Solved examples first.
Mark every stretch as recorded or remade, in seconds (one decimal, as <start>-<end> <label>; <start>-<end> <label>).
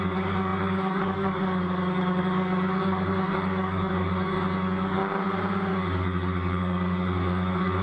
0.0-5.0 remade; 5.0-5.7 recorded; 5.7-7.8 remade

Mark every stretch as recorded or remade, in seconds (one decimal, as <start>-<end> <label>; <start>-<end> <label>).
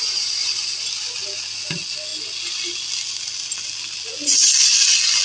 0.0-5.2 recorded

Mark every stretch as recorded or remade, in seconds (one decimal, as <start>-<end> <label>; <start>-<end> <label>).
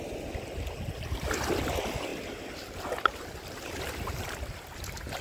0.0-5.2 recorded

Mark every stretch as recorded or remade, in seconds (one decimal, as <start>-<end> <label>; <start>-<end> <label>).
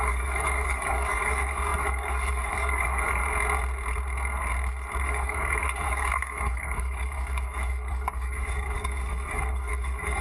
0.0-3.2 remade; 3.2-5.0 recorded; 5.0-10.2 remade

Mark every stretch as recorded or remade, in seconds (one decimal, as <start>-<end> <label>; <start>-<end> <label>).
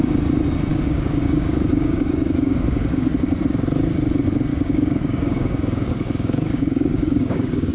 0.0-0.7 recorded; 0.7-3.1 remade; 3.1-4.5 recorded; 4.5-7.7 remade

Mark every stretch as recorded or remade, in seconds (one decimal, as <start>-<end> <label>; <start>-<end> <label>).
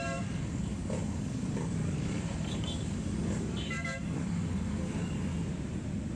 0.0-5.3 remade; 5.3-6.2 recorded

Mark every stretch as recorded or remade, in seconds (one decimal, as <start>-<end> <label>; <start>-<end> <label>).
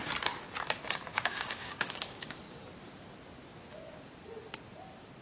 0.0-1.1 recorded; 1.1-2.3 remade; 2.3-5.2 recorded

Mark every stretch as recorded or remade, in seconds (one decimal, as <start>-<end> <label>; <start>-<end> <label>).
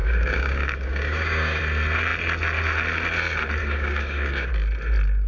0.0-1.6 remade; 1.6-3.6 recorded; 3.6-4.5 remade; 4.5-5.3 recorded